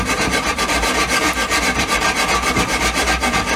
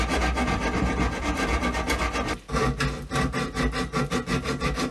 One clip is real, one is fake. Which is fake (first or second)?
first